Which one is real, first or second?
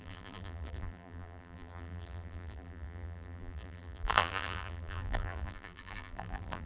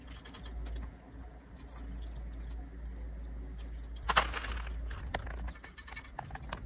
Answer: second